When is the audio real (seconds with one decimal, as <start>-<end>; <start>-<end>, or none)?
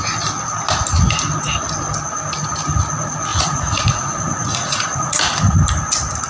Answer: 0.0-3.3; 5.2-6.3